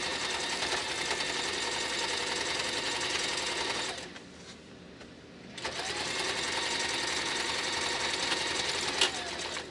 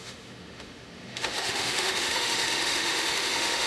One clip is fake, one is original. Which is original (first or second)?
first